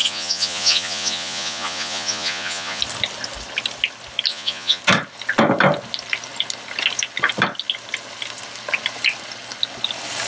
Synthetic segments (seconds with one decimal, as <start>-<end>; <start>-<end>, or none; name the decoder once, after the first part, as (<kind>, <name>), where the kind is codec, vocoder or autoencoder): 0.0-2.8 (vocoder, Vocos); 4.3-4.8